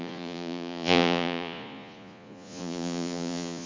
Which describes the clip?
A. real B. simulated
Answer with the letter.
B